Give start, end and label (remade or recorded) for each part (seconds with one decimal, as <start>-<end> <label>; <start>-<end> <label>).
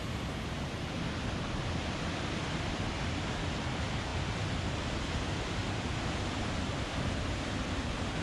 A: 0.0-1.8 recorded; 1.8-3.6 remade; 3.6-5.6 recorded; 5.6-7.1 remade; 7.1-8.2 recorded